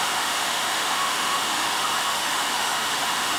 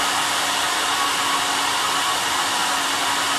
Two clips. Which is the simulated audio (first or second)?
first